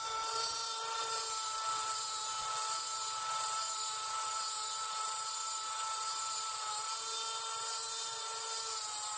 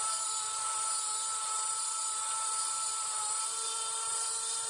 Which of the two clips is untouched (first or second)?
first